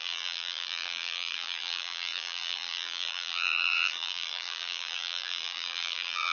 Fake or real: fake